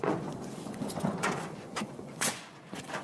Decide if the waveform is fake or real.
fake